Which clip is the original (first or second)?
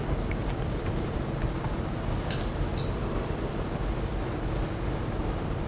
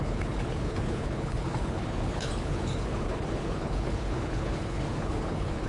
first